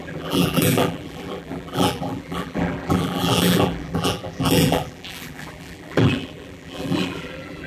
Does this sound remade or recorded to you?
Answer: remade